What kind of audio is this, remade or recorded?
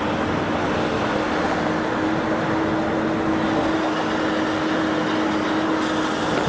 recorded